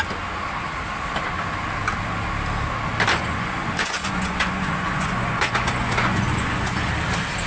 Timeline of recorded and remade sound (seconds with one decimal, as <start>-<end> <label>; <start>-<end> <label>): 0.0-3.2 recorded; 3.2-6.9 remade; 6.9-7.5 recorded